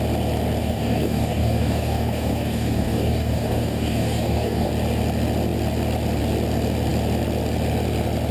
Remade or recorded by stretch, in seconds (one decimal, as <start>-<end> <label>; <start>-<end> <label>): 0.0-0.6 recorded; 0.6-4.7 remade; 4.7-8.3 recorded